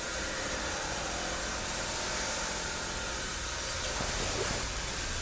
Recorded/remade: recorded